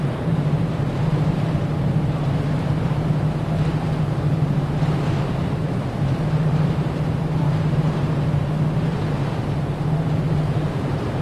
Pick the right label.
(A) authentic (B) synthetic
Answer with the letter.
B